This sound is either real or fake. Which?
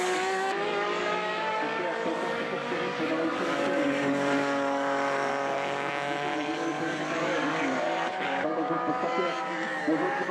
fake